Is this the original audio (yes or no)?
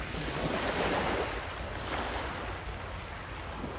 yes